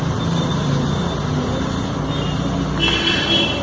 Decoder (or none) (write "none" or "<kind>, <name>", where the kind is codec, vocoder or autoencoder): vocoder, BigVGAN v2